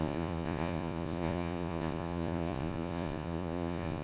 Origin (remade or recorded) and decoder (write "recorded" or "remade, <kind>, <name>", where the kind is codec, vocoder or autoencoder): remade, vocoder, Vocos